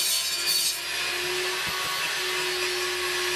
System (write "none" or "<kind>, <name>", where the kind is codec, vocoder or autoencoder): none